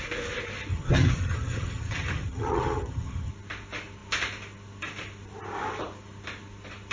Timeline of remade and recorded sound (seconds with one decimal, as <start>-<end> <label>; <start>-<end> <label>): 0.0-0.7 recorded; 0.7-3.3 remade; 3.3-6.9 recorded